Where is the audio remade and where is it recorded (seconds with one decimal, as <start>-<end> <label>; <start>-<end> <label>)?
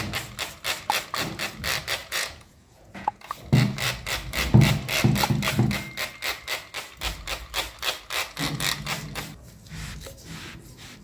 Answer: 0.0-2.0 recorded; 2.0-3.2 remade; 3.2-11.0 recorded